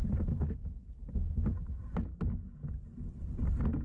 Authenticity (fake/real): real